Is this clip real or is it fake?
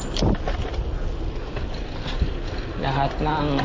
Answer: real